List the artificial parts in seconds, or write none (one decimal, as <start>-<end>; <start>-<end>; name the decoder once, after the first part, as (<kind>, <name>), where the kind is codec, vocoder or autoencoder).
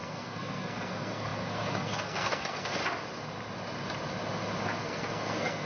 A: 0.0-2.8 (codec, SNAC); 4.8-5.7